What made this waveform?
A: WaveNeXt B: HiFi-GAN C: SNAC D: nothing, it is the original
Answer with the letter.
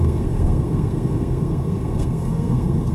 C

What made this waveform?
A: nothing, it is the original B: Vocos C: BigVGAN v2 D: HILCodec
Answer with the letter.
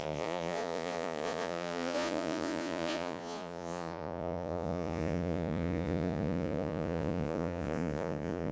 B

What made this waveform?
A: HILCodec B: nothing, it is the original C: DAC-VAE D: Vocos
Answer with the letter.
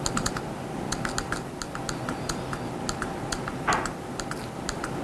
B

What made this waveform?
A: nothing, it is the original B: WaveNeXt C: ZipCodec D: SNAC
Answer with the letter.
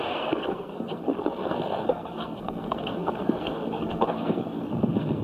D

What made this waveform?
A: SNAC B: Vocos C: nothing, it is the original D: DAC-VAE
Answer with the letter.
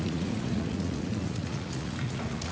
B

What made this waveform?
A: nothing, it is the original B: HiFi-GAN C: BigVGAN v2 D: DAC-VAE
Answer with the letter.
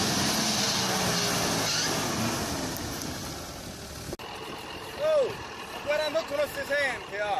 A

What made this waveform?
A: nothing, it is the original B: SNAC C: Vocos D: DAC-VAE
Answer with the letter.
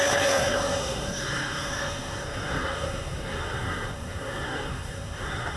B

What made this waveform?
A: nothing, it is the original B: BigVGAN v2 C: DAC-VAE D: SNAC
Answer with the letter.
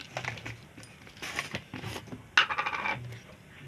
A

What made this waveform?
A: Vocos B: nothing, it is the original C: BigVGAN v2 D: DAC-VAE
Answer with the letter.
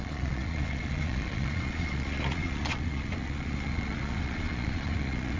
A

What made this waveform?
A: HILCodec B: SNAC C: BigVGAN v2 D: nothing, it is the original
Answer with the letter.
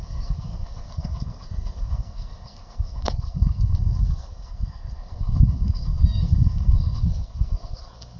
B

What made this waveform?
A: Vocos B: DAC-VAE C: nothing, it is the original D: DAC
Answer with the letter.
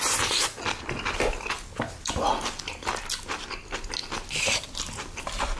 C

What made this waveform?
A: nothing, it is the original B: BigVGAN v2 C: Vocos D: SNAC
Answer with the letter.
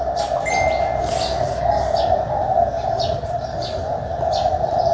A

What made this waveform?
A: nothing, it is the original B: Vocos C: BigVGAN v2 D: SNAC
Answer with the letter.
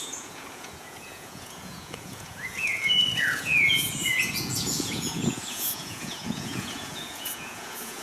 B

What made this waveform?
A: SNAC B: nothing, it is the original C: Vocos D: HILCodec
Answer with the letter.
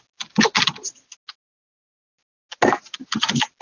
B